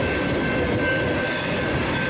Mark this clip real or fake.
real